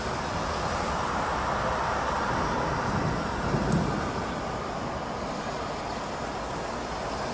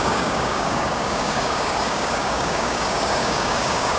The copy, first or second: second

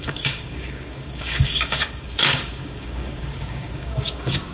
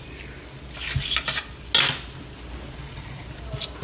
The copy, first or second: first